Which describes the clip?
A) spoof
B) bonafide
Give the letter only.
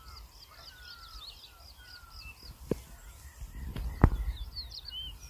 B